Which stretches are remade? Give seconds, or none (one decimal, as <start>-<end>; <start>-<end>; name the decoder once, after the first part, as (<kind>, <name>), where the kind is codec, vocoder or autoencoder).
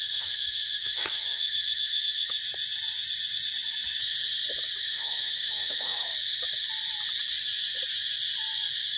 0.0-2.4 (autoencoder, DAC-VAE); 4.9-6.1